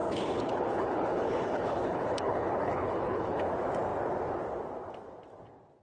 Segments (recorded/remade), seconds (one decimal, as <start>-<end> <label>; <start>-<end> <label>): 0.0-3.5 remade; 3.5-5.8 recorded